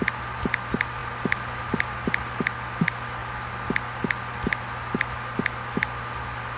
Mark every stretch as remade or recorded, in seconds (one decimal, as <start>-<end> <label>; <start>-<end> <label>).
0.0-6.6 recorded